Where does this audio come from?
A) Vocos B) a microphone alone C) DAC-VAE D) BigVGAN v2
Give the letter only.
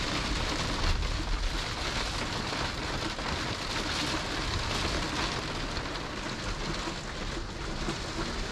B